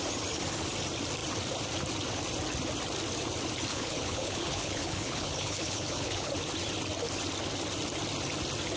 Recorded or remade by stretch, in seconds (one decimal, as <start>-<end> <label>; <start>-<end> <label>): 0.0-3.7 recorded; 3.7-6.3 remade; 6.3-8.8 recorded